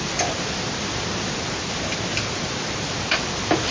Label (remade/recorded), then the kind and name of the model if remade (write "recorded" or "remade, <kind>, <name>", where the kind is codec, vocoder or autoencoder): recorded